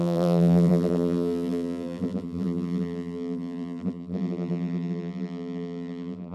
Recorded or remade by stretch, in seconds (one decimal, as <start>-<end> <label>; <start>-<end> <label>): 0.0-6.3 remade